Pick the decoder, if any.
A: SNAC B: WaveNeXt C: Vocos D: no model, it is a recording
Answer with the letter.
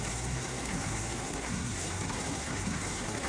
A